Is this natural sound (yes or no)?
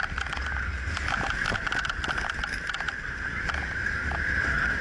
yes